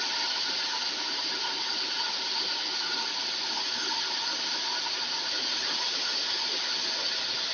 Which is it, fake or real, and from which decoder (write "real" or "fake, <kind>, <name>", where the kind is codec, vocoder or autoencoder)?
real